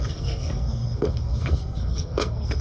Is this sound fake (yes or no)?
yes